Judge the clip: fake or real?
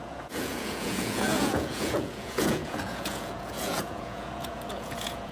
fake